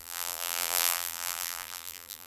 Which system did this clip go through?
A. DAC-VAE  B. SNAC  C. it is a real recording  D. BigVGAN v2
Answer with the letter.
D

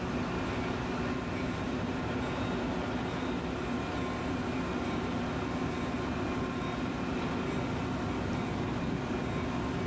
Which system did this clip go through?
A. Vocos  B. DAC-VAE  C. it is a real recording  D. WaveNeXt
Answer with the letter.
C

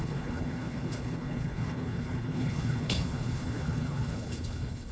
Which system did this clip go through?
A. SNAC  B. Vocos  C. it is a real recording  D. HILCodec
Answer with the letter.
D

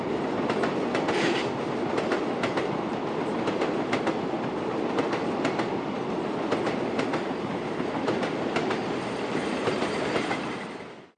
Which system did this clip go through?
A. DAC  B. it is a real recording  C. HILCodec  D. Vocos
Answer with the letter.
B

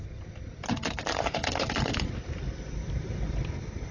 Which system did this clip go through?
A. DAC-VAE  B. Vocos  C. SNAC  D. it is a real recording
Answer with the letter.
D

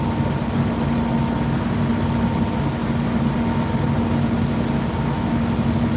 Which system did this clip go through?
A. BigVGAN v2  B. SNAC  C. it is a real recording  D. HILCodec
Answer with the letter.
C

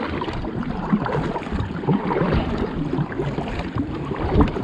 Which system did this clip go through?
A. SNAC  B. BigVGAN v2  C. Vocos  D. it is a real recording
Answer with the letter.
B